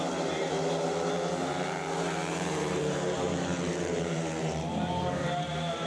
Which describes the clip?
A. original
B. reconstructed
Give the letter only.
B